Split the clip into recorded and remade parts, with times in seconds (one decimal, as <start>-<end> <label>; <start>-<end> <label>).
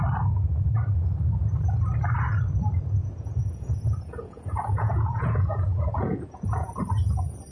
0.0-3.0 recorded; 3.0-6.7 remade; 6.7-7.5 recorded